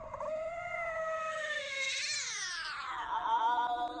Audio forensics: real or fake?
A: real